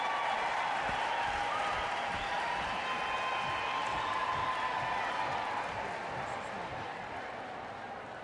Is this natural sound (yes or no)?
yes